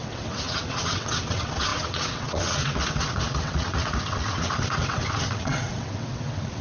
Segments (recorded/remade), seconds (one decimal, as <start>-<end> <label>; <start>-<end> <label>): 0.0-6.6 remade